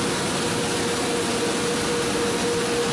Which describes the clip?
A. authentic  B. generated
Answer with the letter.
A